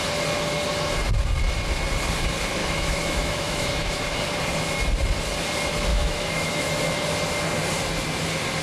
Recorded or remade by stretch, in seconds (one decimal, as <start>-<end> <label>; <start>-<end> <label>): 0.0-2.6 recorded; 2.6-4.0 remade; 4.0-5.9 recorded; 5.9-6.8 remade; 6.8-8.6 recorded